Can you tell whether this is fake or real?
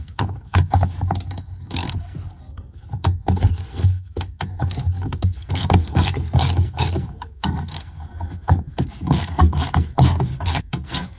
fake